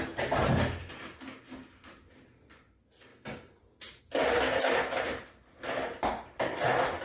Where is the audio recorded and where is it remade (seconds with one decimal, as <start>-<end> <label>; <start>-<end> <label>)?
0.0-7.0 recorded